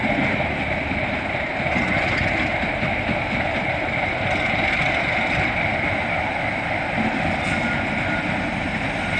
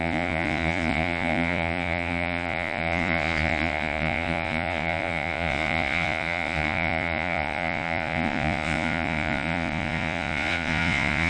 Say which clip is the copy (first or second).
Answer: second